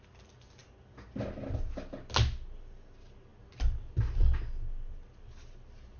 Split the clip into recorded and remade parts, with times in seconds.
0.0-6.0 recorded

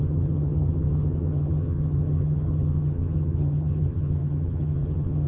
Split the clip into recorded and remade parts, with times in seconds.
0.0-5.3 remade

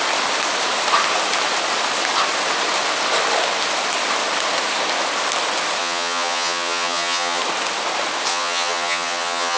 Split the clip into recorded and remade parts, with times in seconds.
0.0-5.8 recorded; 5.8-7.4 remade; 7.4-8.3 recorded; 8.3-9.6 remade

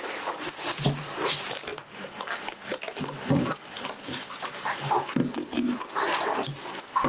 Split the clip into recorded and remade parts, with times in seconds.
0.0-7.1 recorded

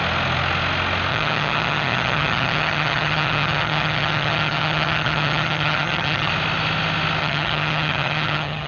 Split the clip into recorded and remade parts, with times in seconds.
0.0-1.1 recorded; 1.1-6.3 remade; 6.3-7.2 recorded; 7.2-8.7 remade

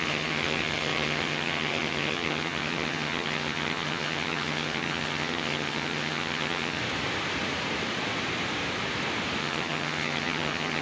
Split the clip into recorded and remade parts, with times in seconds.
0.0-6.8 remade; 6.8-9.4 recorded; 9.4-10.8 remade

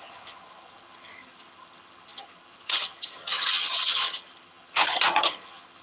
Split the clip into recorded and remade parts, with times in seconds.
0.0-5.8 remade